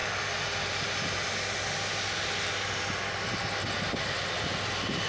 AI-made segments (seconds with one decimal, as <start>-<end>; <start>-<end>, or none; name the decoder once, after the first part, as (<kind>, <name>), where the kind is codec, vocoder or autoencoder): none